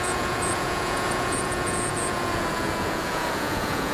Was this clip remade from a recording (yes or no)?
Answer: yes